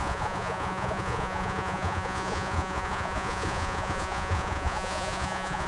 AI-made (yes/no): yes